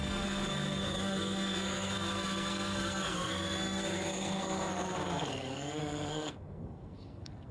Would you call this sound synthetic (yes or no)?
yes